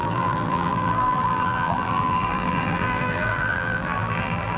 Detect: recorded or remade remade